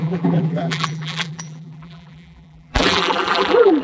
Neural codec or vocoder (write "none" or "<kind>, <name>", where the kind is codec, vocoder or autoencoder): vocoder, BigVGAN v2